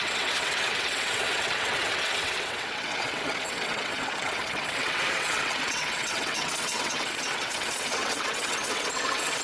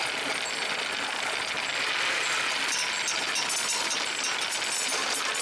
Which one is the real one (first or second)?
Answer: second